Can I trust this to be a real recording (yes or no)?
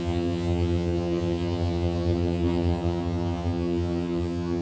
no